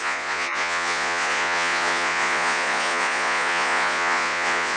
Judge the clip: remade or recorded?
remade